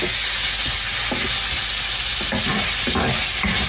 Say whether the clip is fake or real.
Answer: real